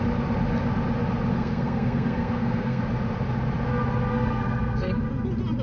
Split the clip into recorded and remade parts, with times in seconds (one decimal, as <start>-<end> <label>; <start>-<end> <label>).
0.0-1.3 recorded; 1.3-2.8 remade; 2.8-4.1 recorded; 4.1-4.9 remade; 4.9-5.6 recorded